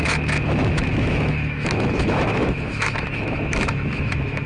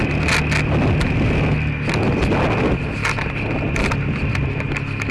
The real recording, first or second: second